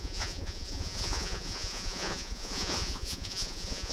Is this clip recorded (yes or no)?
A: no